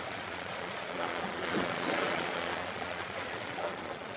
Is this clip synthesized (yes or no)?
yes